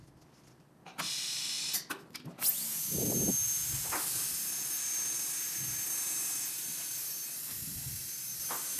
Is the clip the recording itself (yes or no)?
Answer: yes